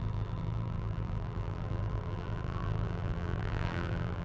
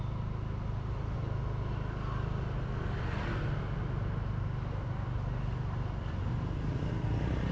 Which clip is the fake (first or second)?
first